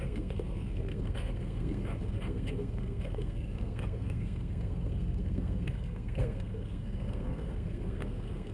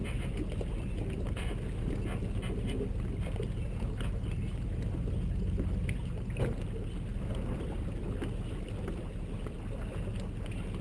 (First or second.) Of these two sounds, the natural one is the second